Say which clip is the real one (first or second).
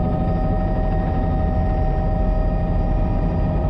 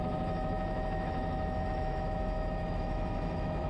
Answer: first